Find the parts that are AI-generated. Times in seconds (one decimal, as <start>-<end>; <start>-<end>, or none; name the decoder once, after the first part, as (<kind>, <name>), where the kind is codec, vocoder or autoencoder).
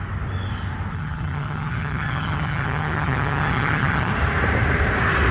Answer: 0.9-4.1 (vocoder, HiFi-GAN)